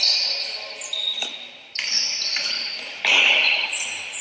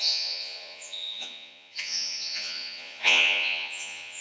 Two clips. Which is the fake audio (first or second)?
second